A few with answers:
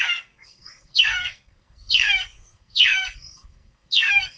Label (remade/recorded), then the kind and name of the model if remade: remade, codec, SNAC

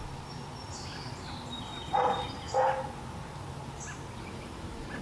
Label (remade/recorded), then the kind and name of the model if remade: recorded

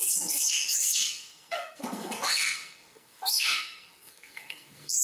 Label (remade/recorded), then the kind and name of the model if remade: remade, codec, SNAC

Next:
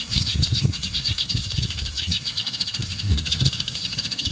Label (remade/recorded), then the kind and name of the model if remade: remade, codec, SNAC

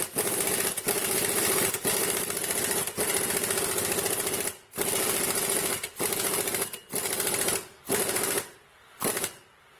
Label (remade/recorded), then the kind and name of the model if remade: recorded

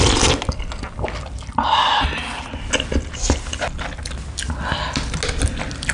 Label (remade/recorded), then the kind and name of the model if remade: recorded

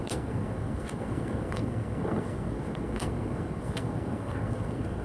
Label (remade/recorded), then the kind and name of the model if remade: remade, codec, SNAC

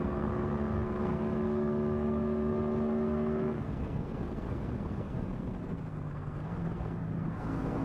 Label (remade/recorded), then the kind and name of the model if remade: remade, codec, SNAC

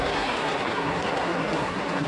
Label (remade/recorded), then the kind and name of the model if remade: remade, codec, SNAC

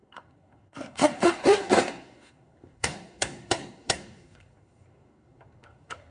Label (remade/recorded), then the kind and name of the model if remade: remade, codec, SNAC